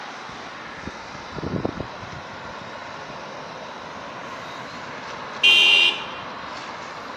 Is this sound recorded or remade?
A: recorded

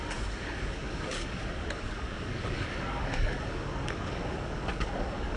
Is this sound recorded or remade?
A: remade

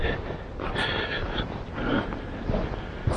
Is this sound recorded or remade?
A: recorded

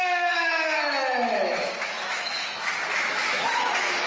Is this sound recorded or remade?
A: remade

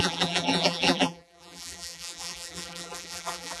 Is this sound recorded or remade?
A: remade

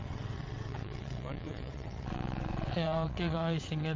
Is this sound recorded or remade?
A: remade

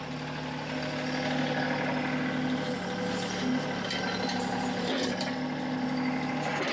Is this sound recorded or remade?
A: recorded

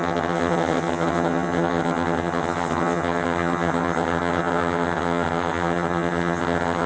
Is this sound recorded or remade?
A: remade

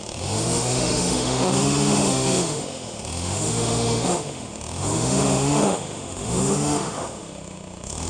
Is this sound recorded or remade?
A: remade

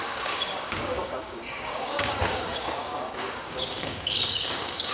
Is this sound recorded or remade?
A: remade